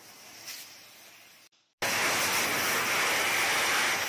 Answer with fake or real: real